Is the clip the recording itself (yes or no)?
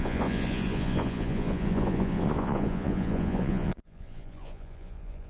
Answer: no